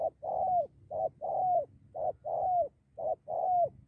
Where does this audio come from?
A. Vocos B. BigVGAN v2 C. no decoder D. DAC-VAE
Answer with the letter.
C